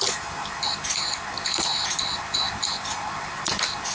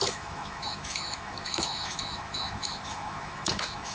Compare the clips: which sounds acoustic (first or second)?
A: first